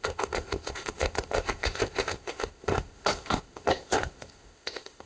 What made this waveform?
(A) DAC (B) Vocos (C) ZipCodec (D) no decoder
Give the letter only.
C